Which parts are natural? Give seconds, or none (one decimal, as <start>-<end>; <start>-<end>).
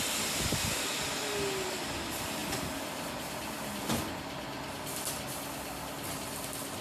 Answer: 0.0-6.8